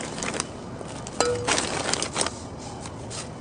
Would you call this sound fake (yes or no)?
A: no